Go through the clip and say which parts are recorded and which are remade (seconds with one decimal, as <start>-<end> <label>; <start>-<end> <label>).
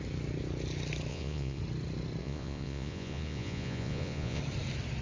0.0-1.1 recorded; 1.1-1.6 remade; 1.6-2.2 recorded; 2.2-4.4 remade; 4.4-5.0 recorded